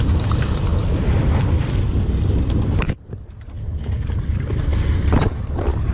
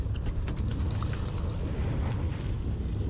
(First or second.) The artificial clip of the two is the first